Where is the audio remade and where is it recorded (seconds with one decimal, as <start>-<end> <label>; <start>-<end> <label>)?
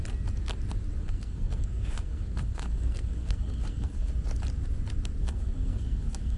0.0-1.0 recorded; 1.0-4.1 remade; 4.1-5.2 recorded; 5.2-6.4 remade